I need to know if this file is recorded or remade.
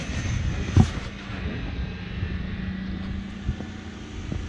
recorded